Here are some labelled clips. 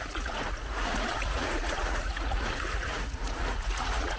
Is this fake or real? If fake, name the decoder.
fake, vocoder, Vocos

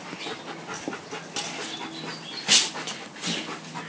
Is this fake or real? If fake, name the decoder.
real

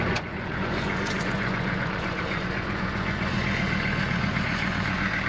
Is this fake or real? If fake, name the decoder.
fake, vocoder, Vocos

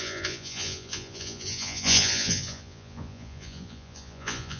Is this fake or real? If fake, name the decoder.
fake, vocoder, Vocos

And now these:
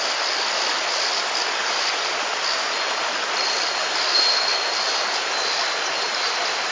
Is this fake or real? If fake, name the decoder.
real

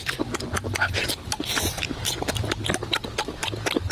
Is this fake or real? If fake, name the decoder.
real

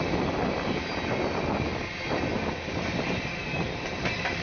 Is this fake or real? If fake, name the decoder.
real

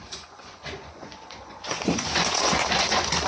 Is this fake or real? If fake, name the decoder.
fake, vocoder, Vocos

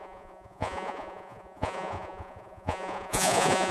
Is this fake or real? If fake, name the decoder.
fake, vocoder, Vocos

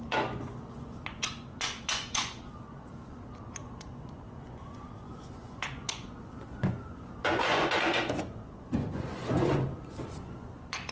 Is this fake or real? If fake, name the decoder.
fake, vocoder, Vocos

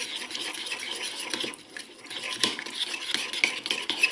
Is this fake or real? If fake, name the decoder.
real